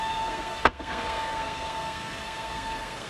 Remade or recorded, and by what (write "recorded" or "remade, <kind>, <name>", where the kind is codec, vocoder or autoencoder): remade, codec, SNAC